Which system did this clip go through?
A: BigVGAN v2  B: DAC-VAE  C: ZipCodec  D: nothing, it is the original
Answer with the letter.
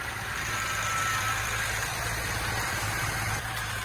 A